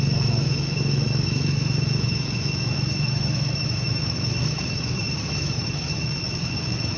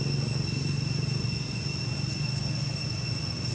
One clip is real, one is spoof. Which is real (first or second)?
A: second